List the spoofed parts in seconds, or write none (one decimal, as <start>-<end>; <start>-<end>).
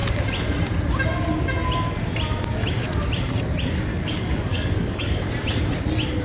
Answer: 3.9-5.3